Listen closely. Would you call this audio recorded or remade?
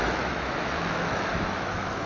remade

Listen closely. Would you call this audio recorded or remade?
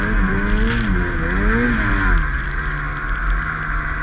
recorded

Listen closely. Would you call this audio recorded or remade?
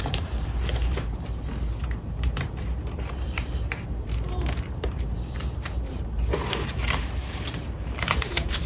remade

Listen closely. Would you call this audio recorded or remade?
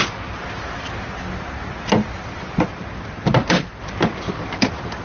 recorded